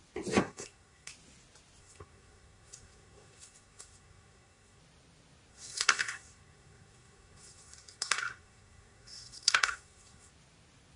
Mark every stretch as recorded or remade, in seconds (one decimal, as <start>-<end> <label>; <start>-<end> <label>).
0.0-0.4 recorded; 0.4-1.1 remade; 1.1-1.8 recorded; 1.8-4.8 remade; 4.8-5.5 recorded; 5.5-10.3 remade; 10.3-11.0 recorded